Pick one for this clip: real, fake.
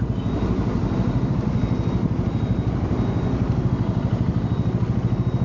real